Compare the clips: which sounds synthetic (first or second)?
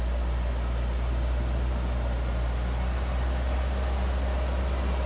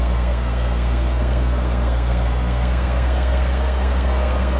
second